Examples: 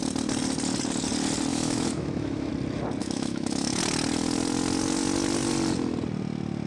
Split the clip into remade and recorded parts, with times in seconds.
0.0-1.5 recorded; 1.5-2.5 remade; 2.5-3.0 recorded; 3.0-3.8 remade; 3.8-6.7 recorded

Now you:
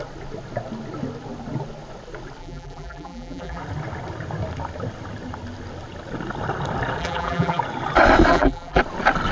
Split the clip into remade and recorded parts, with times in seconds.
0.0-2.4 recorded; 2.4-3.6 remade; 3.6-7.0 recorded; 7.0-7.6 remade; 7.6-8.3 recorded; 8.3-8.8 remade; 8.8-9.3 recorded

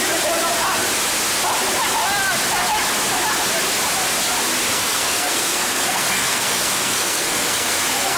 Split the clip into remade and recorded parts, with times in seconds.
0.0-4.7 recorded; 4.7-8.2 remade

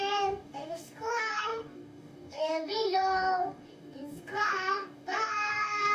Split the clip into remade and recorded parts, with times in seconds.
0.0-5.9 remade

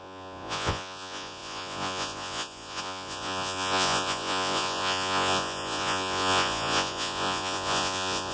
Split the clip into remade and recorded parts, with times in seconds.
0.0-8.3 remade

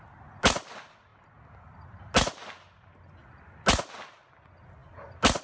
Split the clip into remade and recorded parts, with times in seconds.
0.0-5.4 recorded

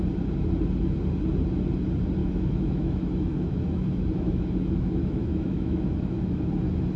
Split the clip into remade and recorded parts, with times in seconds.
0.0-2.2 recorded; 2.2-6.4 remade; 6.4-7.0 recorded